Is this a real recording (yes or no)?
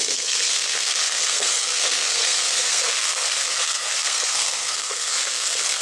no